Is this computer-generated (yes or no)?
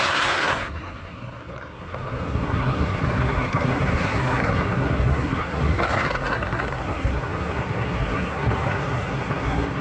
yes